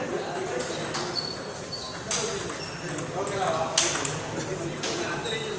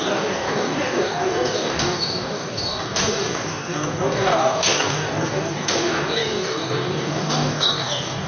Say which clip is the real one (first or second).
first